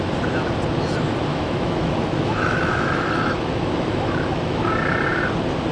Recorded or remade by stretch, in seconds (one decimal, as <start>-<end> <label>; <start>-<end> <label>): 0.0-1.3 recorded; 1.3-4.7 remade; 4.7-5.7 recorded